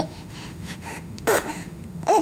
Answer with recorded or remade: remade